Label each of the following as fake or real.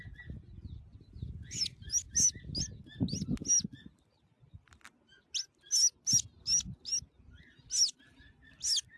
real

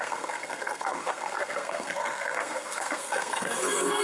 fake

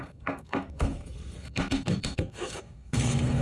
fake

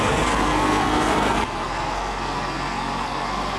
fake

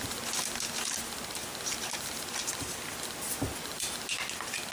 real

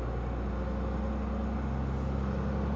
real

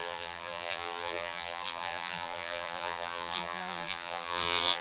fake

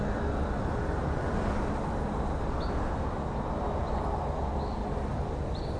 real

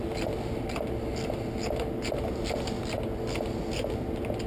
real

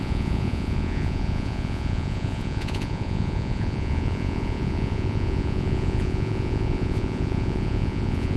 fake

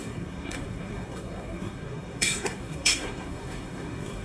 fake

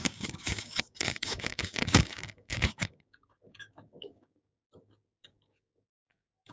fake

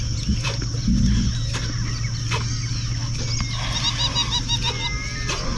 real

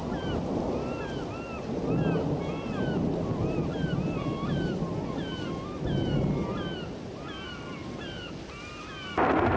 real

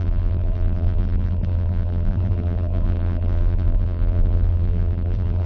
fake